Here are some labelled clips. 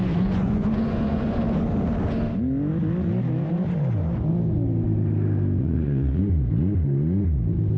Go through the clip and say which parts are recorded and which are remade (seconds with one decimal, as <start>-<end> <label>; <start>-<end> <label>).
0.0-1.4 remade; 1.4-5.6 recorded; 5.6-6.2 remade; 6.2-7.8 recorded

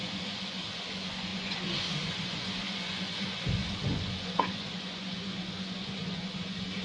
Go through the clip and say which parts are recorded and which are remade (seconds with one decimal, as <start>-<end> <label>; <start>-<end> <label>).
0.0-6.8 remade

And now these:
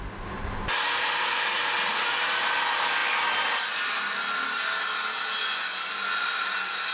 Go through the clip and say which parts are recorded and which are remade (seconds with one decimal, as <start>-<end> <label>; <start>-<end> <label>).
0.0-5.4 recorded; 5.4-5.9 remade; 5.9-6.9 recorded

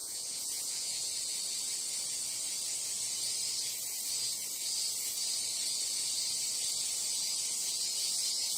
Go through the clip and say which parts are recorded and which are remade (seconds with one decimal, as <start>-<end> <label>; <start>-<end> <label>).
0.0-0.9 remade; 0.9-8.6 recorded

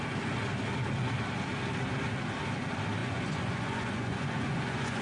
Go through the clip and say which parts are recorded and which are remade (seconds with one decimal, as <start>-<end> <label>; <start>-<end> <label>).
0.0-3.0 recorded; 3.0-5.0 remade

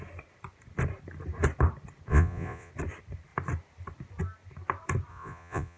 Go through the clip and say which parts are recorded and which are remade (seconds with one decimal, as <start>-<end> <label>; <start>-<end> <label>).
0.0-2.1 recorded; 2.1-2.7 remade; 2.7-5.1 recorded; 5.1-5.8 remade

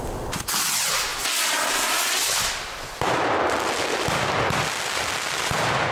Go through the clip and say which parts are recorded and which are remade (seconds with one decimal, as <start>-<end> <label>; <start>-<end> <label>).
0.0-5.9 recorded